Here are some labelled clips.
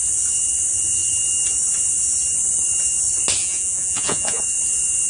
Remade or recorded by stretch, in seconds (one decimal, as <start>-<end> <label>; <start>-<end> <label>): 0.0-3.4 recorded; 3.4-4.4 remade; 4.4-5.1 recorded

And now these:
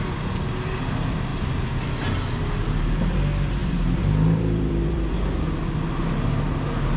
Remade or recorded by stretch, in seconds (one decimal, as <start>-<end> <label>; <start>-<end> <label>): 0.0-3.6 recorded; 3.6-5.1 remade; 5.1-7.0 recorded

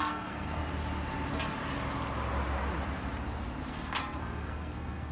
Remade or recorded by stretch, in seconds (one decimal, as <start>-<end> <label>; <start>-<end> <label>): 0.0-0.6 remade; 0.6-3.7 recorded; 3.7-5.1 remade

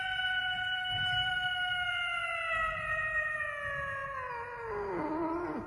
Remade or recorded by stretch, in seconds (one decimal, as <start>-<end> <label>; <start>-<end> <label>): 0.0-0.4 recorded; 0.4-1.3 remade; 1.3-2.2 recorded; 2.2-3.4 remade; 3.4-5.7 recorded

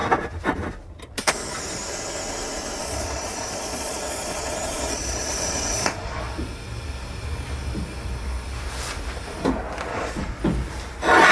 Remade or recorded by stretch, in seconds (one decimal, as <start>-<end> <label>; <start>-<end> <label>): 0.0-2.8 recorded; 2.8-6.2 remade; 6.2-9.9 recorded; 9.9-10.4 remade; 10.4-11.3 recorded